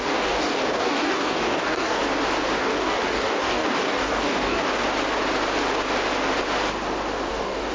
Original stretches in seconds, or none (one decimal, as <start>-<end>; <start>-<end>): 2.0-2.6; 4.7-7.3